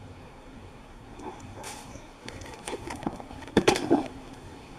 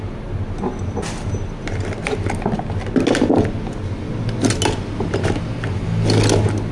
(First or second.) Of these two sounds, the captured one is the second